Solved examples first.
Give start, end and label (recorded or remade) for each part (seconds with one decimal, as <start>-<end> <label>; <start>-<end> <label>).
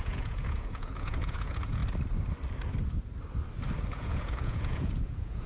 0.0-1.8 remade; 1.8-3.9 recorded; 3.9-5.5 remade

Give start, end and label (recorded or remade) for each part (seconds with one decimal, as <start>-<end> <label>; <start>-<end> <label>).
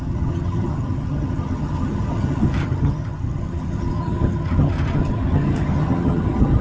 0.0-6.6 remade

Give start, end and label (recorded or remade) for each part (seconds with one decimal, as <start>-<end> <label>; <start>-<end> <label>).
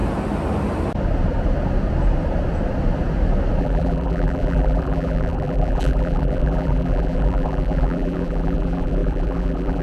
0.0-3.6 recorded; 3.6-9.8 remade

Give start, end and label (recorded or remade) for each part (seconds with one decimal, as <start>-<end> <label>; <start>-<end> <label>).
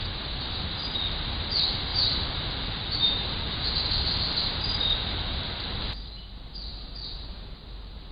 0.0-1.9 recorded; 1.9-3.7 remade; 3.7-8.1 recorded